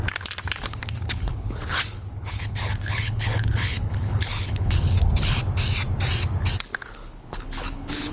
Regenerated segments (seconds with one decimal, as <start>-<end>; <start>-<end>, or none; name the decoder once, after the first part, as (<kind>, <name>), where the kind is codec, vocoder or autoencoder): 0.6-5.4 (codec, HILCodec); 6.7-8.1